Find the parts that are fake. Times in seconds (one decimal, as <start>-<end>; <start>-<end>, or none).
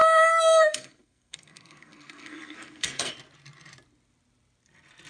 0.0-3.1